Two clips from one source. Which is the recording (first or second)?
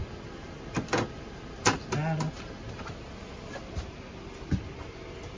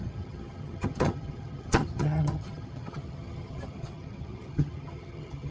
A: first